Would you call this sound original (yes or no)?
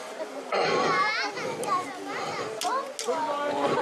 yes